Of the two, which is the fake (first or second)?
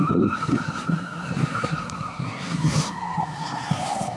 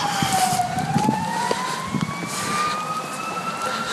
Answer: first